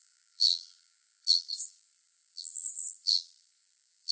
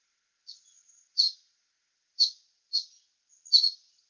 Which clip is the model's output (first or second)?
first